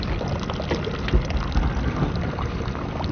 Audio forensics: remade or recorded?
recorded